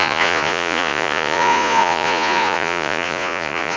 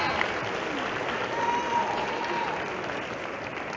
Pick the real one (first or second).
second